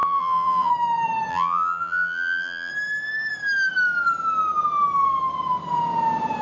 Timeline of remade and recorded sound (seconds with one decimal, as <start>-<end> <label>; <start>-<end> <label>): 0.0-0.7 remade; 0.7-1.3 recorded; 1.3-2.7 remade; 2.7-6.4 recorded